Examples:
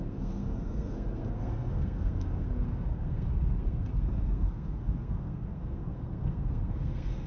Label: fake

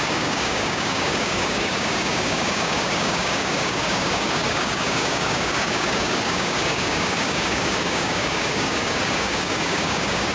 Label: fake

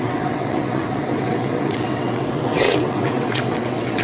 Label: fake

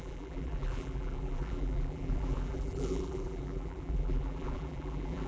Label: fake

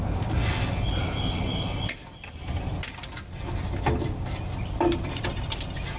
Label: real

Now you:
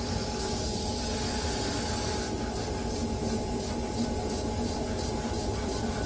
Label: real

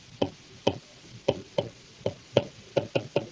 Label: fake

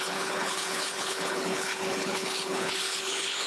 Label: fake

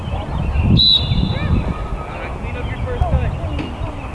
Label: real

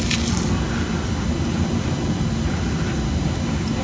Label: real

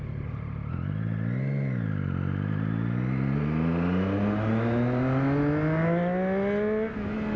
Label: real